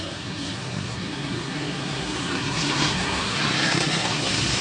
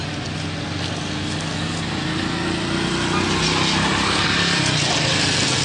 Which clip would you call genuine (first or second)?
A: second